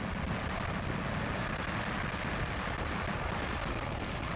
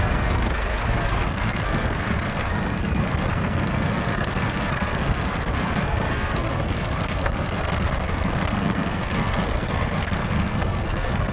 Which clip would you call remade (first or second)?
second